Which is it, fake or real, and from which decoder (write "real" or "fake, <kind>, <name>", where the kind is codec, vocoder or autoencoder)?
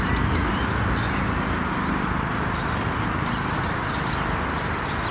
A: real